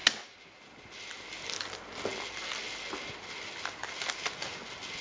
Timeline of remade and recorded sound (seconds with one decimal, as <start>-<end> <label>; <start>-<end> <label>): 0.0-5.0 recorded